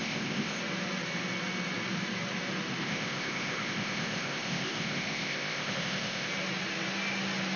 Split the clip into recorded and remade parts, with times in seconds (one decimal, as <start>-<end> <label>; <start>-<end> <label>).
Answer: 0.0-0.6 remade; 0.6-2.8 recorded; 2.8-6.3 remade; 6.3-7.6 recorded